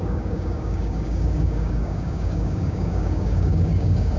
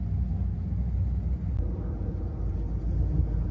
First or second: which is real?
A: second